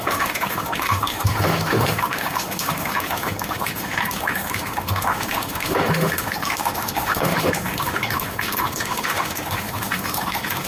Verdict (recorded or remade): remade